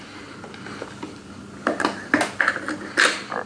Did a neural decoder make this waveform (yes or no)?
no